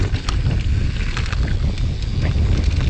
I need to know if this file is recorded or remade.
recorded